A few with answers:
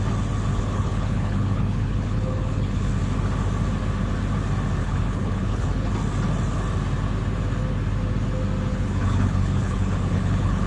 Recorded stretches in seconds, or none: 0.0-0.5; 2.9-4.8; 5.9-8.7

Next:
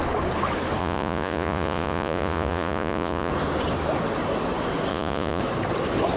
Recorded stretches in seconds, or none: 0.0-0.8; 3.3-4.9; 5.4-6.2

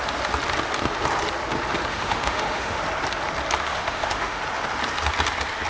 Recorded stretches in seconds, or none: 0.0-1.9; 2.8-3.7; 4.4-5.7

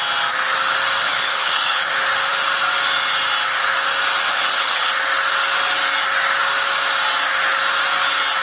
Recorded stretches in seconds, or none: 0.0-1.0; 1.9-4.2; 4.9-8.4

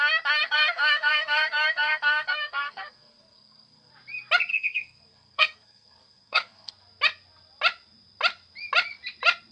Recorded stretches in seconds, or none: 0.0-0.4; 3.9-4.5; 6.7-9.5